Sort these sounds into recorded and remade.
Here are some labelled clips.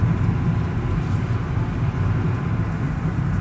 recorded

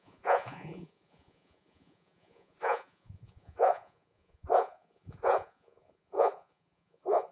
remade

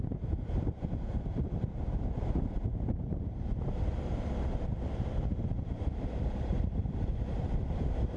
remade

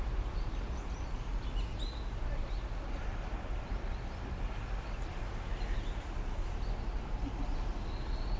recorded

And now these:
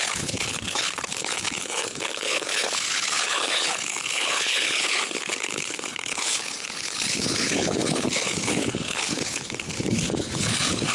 remade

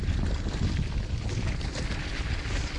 recorded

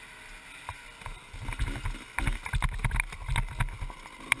recorded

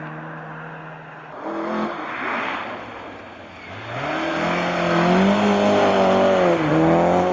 recorded